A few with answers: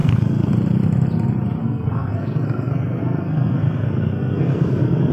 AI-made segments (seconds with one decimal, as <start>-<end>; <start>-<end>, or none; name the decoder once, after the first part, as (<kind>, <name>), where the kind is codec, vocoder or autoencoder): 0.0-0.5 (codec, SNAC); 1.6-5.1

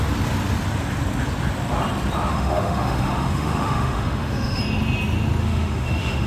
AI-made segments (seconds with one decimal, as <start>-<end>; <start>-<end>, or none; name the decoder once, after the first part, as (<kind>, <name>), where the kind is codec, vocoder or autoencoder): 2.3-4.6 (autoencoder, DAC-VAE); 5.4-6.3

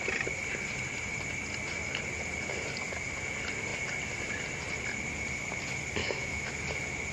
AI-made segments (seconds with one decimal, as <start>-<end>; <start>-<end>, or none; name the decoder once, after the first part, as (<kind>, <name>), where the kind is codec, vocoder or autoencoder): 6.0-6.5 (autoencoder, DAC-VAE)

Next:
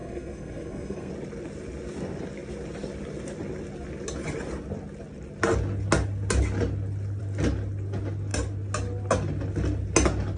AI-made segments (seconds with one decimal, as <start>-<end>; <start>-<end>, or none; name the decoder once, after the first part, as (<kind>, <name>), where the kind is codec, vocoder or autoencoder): 0.0-1.1 (codec, SNAC)

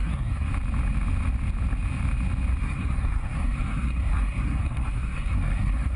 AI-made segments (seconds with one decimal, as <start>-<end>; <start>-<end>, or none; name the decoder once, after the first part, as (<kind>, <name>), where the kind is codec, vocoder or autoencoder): 0.0-0.5 (codec, SNAC); 2.6-6.0